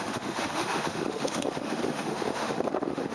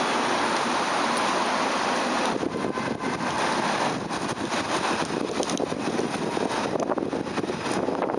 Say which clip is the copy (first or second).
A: first